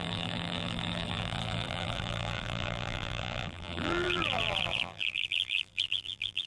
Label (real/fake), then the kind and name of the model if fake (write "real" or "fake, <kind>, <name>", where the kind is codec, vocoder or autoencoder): fake, vocoder, BigVGAN v2